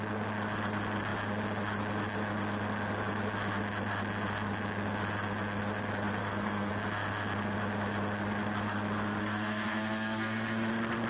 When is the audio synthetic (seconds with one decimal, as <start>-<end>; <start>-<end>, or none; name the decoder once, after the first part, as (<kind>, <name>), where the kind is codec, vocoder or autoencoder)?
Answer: 6.2-6.7 (codec, SNAC); 9.2-10.7